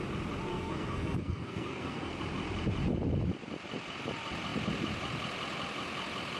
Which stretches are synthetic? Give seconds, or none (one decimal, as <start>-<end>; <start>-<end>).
0.5-2.2